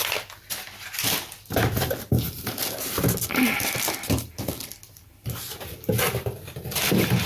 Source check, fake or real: real